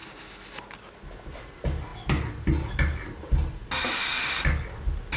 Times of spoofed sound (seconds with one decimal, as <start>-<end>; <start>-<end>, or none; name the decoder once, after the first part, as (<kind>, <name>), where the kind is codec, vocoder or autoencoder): none